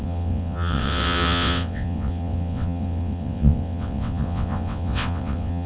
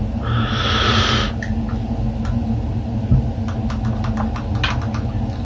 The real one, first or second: second